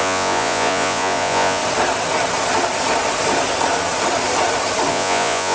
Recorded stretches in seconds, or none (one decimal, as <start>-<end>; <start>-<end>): 1.6-4.9

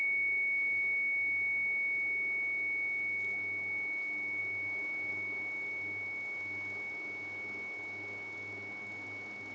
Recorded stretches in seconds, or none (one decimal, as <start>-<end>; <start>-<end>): 0.0-9.5

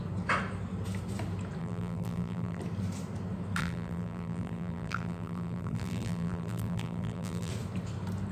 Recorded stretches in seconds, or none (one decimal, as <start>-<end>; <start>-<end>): 0.0-1.6; 2.6-3.6; 7.5-8.3

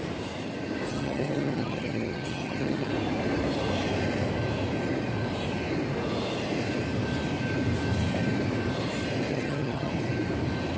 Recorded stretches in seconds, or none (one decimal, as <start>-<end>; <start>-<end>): 0.0-0.9; 2.9-9.3; 9.9-10.8

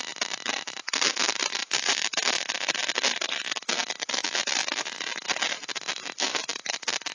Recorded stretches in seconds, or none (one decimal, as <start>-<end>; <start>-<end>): 0.0-1.6; 2.3-7.1

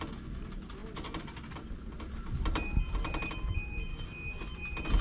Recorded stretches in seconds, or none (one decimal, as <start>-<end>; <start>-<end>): 0.0-3.9; 4.5-5.0